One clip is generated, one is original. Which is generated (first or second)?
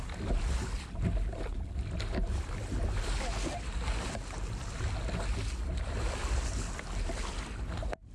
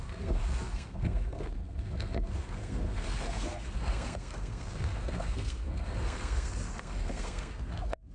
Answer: second